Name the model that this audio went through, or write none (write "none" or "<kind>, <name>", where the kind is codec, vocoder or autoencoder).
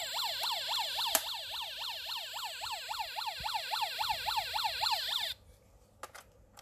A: none